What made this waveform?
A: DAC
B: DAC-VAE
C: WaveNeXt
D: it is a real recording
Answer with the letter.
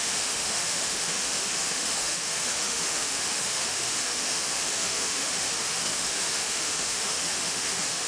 B